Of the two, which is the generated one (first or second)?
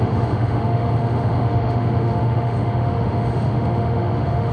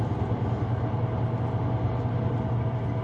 first